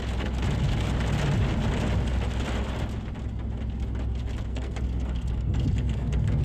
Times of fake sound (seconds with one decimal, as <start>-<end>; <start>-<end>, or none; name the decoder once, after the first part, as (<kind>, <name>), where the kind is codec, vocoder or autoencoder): 4.5-6.4 (codec, SNAC)